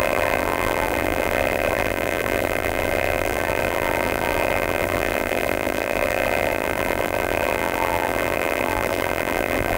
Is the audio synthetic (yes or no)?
yes